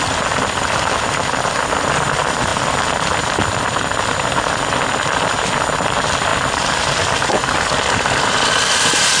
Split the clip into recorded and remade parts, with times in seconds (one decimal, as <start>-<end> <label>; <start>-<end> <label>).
0.0-6.3 recorded; 6.3-8.5 remade; 8.5-9.2 recorded